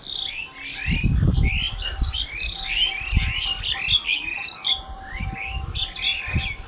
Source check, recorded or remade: recorded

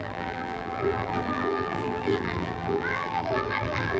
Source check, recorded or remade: remade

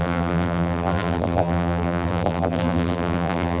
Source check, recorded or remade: remade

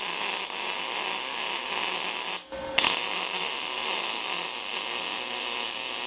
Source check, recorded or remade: recorded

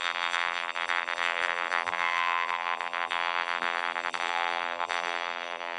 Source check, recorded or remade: remade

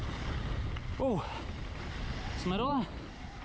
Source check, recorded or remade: recorded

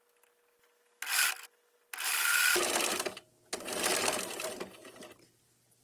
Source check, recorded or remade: recorded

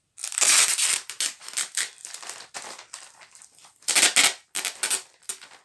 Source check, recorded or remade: recorded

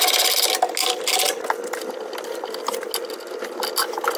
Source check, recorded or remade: recorded